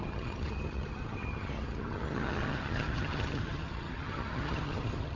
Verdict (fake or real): fake